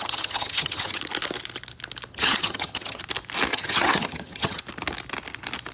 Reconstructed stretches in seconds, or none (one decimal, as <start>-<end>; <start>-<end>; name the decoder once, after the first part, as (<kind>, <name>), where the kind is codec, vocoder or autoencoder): 0.0-1.0 (vocoder, HiFi-GAN); 2.1-3.0; 3.5-4.6